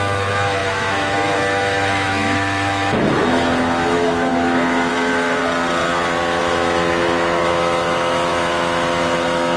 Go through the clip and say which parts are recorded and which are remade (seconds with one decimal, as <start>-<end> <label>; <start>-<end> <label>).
0.0-5.4 remade; 5.4-6.4 recorded; 6.4-9.6 remade